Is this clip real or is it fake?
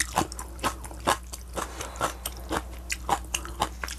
real